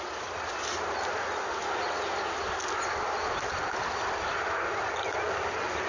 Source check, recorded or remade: recorded